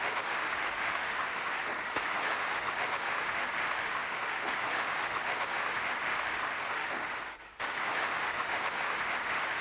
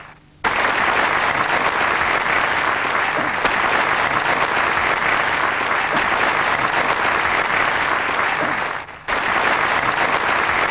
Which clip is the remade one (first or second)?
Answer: first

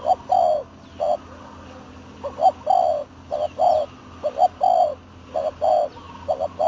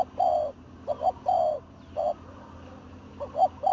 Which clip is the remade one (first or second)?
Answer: second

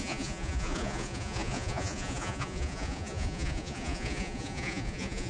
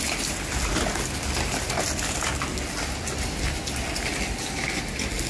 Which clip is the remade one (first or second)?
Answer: first